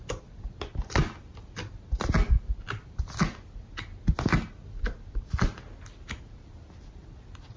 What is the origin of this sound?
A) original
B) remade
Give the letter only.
A